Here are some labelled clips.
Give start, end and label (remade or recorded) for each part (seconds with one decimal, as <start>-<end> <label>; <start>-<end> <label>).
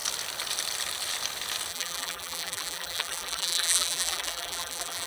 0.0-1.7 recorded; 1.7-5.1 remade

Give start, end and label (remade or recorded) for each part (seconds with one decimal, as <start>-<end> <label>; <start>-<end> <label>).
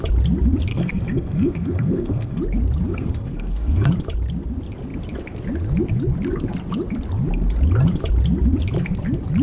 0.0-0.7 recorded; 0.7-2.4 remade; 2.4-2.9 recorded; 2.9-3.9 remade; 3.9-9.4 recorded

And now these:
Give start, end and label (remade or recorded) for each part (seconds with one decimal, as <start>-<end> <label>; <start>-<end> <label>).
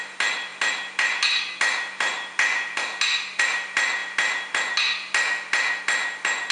0.0-6.5 recorded